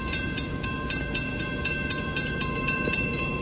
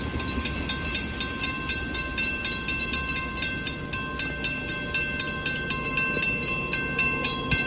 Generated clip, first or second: first